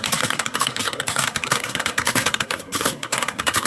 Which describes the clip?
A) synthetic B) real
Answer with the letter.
A